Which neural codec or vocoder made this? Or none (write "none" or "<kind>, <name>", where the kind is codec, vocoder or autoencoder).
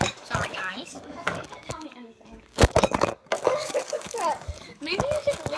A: codec, DAC